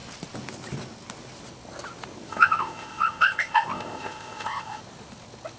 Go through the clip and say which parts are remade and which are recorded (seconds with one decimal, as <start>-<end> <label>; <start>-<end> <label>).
0.0-2.3 recorded; 2.3-4.8 remade; 4.8-5.6 recorded